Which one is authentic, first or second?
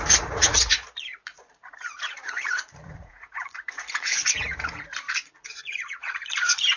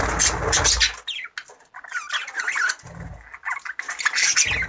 second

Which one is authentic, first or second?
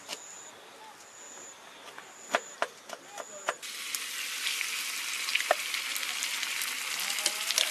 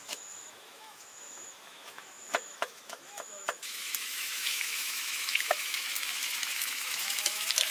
first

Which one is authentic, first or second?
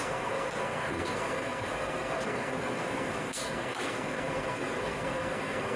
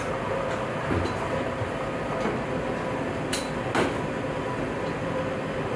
second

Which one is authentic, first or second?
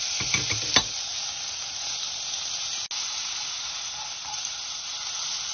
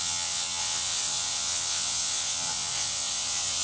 first